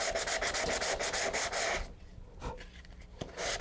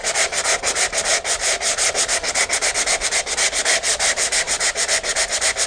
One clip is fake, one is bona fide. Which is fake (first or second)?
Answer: second